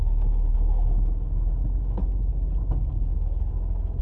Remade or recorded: recorded